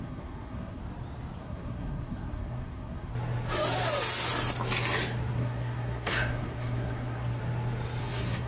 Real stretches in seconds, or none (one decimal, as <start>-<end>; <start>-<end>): 0.8-1.4; 3.1-5.3; 7.4-8.0